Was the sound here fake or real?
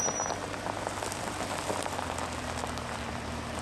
real